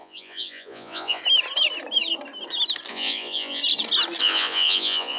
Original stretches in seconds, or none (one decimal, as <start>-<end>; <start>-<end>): 1.2-2.9; 3.6-4.2